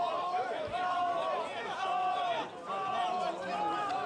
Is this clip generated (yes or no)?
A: no